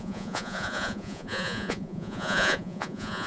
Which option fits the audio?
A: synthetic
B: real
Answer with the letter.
A